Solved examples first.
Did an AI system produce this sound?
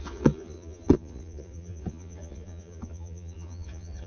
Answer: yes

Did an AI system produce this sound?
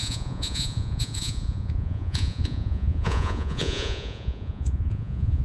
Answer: yes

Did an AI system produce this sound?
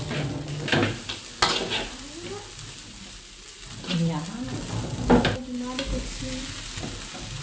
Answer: no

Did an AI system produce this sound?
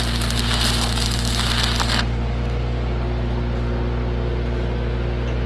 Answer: no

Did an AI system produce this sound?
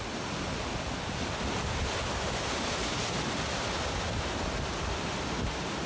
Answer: no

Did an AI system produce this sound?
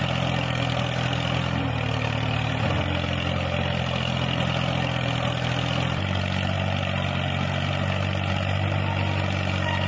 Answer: no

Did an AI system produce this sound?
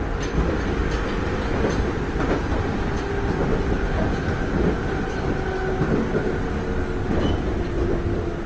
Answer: no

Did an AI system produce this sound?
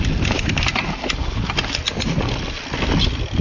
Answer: no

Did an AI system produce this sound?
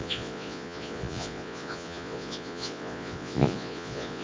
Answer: yes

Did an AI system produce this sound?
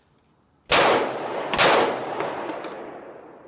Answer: no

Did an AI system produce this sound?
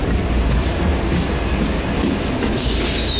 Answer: no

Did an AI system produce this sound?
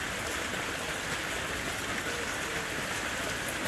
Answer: no